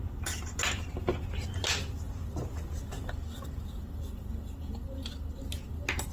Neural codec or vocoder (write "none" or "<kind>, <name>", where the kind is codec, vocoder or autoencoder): none